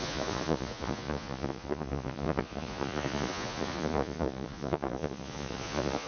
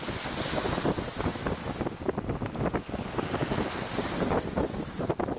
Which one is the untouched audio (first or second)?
second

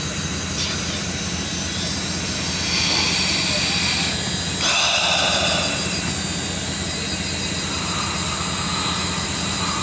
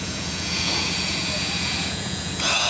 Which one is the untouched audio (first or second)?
first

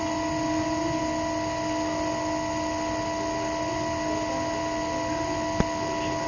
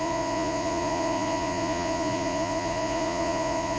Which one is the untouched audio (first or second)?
first